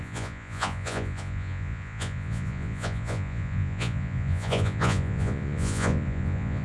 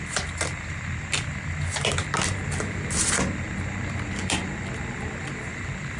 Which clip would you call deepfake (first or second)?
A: first